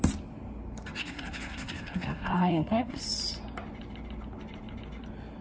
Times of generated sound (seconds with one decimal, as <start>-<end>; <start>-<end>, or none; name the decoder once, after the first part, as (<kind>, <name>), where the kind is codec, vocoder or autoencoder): 1.0-3.0 (codec, SNAC)